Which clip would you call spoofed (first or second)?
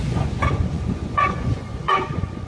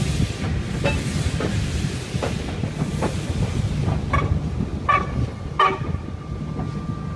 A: first